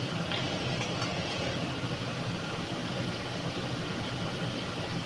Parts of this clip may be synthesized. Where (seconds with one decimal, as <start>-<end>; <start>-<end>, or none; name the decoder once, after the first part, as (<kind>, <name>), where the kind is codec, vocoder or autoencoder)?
1.1-1.6 (vocoder, Vocos)